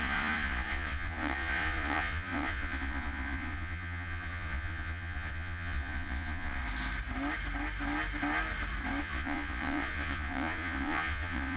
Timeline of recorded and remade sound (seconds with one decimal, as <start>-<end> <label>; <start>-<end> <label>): 0.0-6.6 remade; 6.6-9.0 recorded; 9.0-11.6 remade